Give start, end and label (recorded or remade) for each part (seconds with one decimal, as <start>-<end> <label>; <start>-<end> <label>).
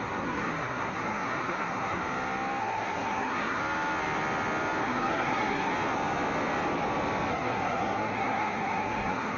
0.0-2.0 remade; 2.0-2.6 recorded; 2.6-3.6 remade; 3.6-4.8 recorded; 4.8-5.7 remade; 5.7-7.3 recorded; 7.3-9.4 remade